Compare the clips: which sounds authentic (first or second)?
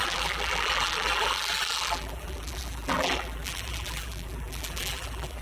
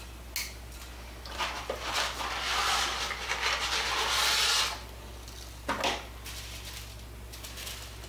second